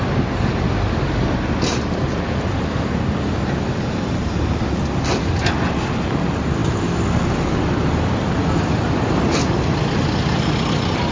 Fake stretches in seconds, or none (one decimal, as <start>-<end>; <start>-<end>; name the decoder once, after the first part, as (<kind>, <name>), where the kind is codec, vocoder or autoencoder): none